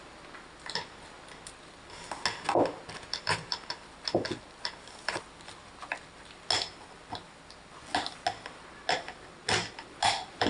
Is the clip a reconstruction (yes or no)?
no